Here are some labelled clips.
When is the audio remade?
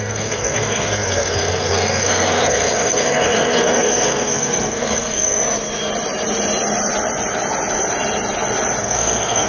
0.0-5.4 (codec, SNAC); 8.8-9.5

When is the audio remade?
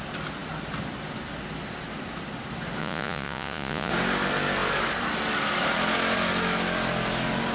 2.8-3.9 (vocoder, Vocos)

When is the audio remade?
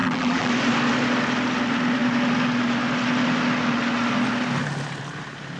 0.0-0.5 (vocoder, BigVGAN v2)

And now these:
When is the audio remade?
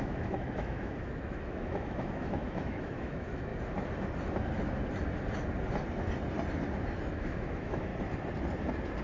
0.0-3.5 (autoencoder, DAC-VAE); 7.1-7.9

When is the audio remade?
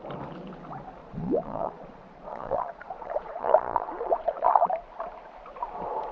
1.0-4.7 (vocoder, Vocos)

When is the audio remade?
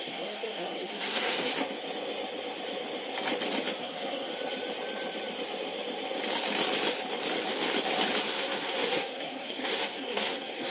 0.0-1.5 (codec, SNAC); 3.8-4.3; 8.2-10.7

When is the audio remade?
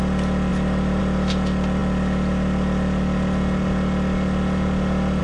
none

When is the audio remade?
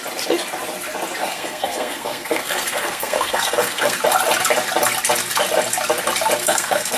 1.2-4.0 (codec, SNAC); 6.4-7.0